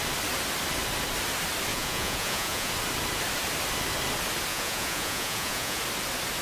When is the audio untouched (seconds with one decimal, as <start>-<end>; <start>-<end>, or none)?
0.0-1.7; 2.7-4.5; 5.8-6.4